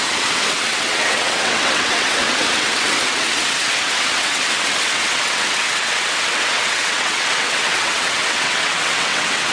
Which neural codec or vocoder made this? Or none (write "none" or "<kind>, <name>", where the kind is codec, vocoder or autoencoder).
vocoder, WaveNeXt